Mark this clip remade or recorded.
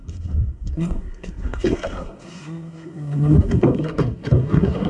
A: remade